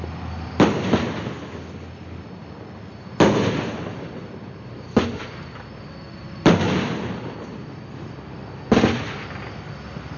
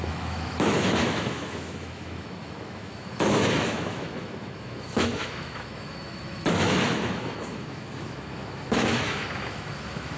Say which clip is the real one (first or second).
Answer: first